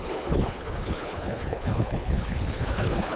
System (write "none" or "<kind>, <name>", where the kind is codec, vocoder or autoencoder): codec, HILCodec